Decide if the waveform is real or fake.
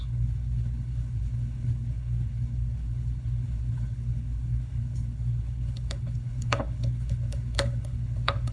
fake